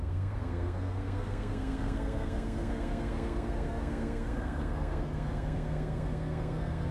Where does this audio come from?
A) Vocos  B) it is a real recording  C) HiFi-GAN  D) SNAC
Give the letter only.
D